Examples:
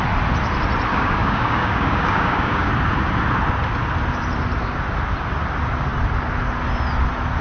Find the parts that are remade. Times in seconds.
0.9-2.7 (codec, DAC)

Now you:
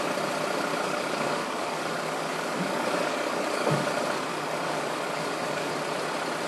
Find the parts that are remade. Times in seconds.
0.7-3.9 (codec, DAC); 4.3-5.7